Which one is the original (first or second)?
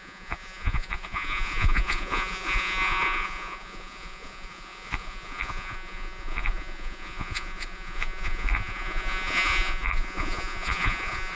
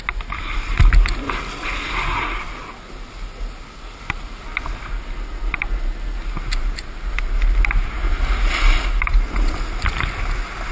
second